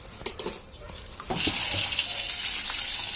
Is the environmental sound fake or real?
real